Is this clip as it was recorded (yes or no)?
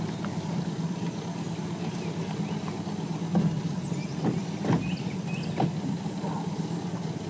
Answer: yes